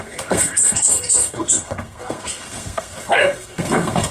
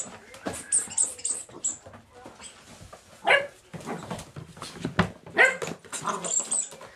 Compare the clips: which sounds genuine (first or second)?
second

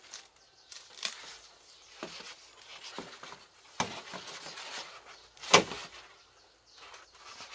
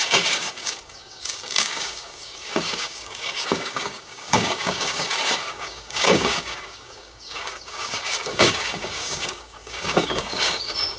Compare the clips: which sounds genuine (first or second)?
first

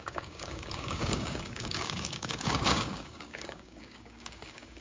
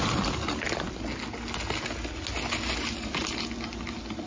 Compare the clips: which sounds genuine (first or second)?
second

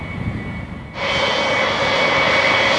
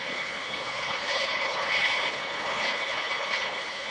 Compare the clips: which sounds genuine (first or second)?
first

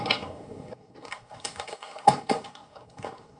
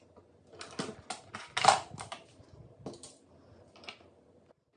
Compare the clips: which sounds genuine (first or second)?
second